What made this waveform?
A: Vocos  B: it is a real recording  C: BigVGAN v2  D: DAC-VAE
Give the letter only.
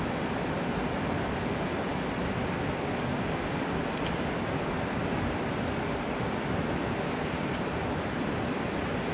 B